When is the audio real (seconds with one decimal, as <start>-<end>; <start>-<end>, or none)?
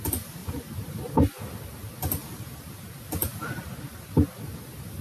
0.0-0.4; 1.5-5.0